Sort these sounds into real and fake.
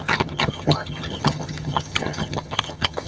fake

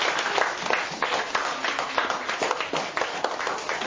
real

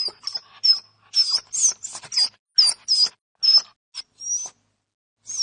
real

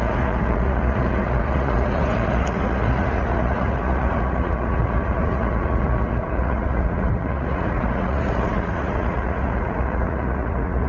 fake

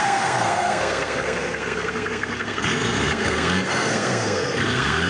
fake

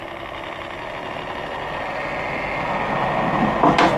real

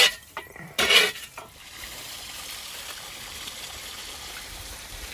fake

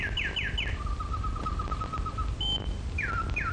real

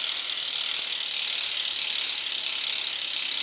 real